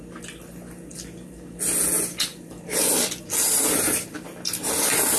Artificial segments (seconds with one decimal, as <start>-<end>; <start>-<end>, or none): 0.9-1.8; 2.3-3.2